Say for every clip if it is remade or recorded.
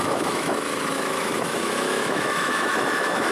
remade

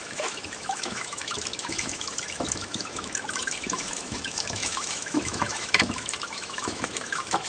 remade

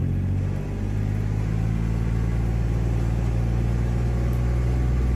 recorded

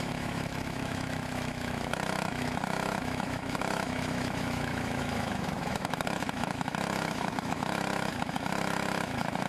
remade